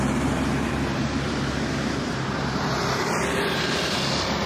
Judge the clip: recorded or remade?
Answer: remade